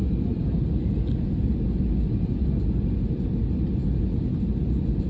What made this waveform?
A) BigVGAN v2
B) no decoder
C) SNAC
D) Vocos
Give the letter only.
B